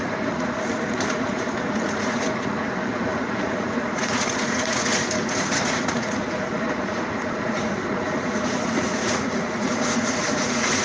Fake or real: fake